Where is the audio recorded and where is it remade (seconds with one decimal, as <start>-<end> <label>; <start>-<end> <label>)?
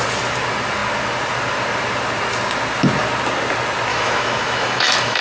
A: 0.0-3.9 recorded; 3.9-5.2 remade